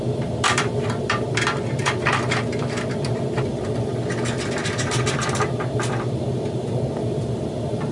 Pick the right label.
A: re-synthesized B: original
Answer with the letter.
A